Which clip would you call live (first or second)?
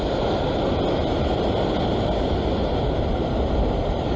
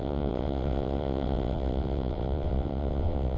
first